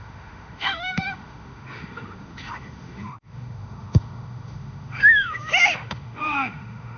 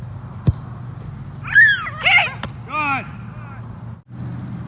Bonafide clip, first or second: second